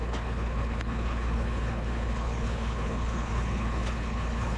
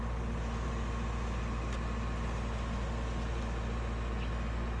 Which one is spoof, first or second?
first